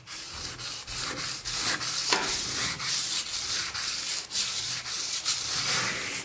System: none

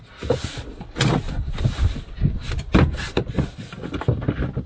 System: none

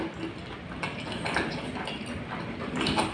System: none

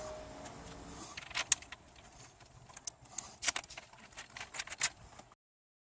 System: none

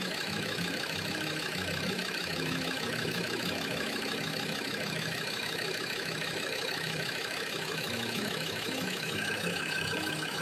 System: autoencoder, DAC-VAE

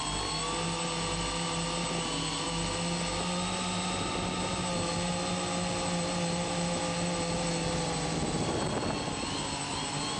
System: none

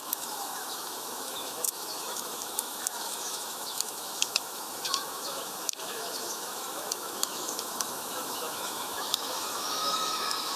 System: autoencoder, DAC-VAE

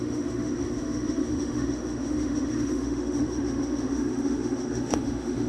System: autoencoder, DAC-VAE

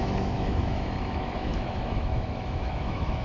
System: autoencoder, DAC-VAE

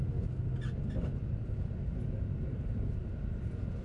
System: none